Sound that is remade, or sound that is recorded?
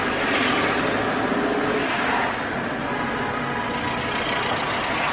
recorded